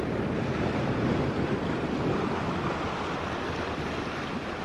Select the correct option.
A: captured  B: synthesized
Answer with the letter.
A